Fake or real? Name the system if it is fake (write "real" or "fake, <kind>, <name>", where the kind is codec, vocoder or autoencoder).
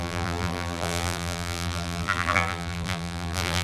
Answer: fake, vocoder, BigVGAN v2